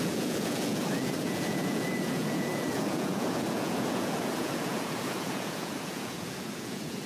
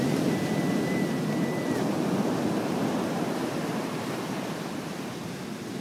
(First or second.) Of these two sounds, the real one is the second